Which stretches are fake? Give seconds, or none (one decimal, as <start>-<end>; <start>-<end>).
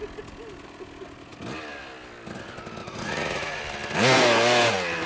2.8-3.6